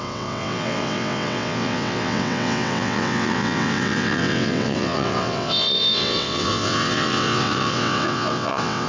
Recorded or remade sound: remade